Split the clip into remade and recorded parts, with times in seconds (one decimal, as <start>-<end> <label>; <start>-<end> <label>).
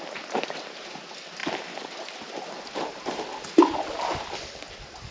0.0-5.1 recorded